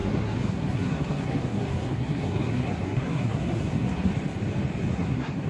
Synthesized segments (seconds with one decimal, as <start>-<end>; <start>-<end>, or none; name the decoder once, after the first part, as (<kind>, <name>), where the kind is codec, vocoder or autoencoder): 0.0-4.1 (codec, SNAC); 4.9-5.5